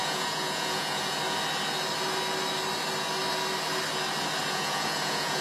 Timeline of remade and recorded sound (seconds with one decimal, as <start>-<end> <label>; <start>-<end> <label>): 0.0-1.2 remade; 1.2-4.4 recorded; 4.4-5.4 remade